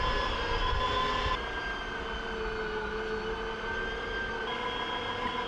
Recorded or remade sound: recorded